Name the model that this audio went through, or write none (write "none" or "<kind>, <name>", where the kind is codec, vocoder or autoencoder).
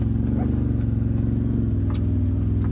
none